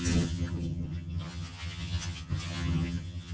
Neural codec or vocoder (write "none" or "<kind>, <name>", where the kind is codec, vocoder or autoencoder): vocoder, HiFi-GAN